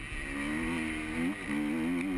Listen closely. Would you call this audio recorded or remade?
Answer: recorded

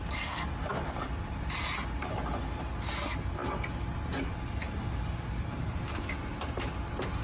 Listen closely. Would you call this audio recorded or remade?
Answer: recorded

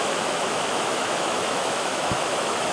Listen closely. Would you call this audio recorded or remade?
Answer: remade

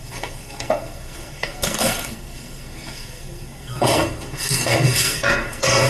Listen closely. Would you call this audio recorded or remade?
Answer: remade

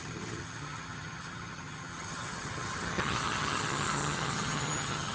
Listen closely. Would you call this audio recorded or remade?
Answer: remade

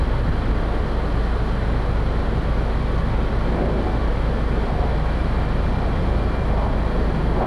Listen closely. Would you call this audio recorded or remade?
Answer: recorded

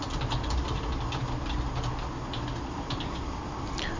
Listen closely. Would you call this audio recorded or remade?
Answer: recorded